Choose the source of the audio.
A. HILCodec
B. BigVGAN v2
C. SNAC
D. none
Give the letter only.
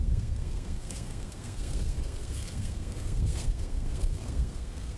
C